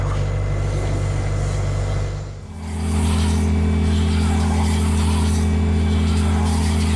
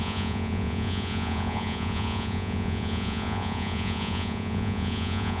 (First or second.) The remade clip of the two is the second